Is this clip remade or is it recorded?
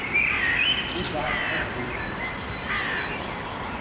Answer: remade